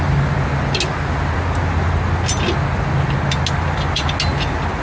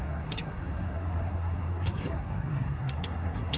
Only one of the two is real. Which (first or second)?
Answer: first